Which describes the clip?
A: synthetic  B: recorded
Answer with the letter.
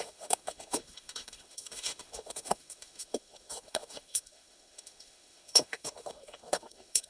A